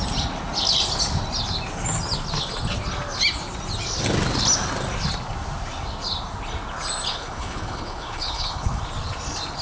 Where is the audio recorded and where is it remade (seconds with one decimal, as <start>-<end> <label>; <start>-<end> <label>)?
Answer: 0.0-7.1 recorded; 7.1-8.8 remade; 8.8-9.6 recorded